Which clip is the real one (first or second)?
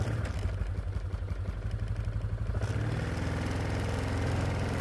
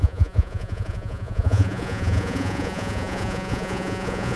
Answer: first